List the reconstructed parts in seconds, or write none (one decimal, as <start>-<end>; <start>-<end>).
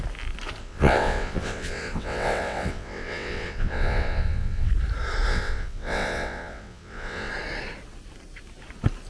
0.6-4.7; 5.3-7.3